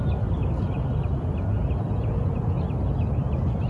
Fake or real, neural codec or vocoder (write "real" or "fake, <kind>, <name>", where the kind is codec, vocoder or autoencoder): real